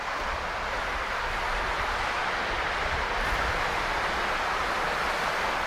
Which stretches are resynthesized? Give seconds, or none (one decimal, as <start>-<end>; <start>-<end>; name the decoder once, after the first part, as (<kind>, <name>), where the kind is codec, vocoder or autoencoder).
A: 2.2-3.0 (vocoder, BigVGAN v2); 4.6-5.3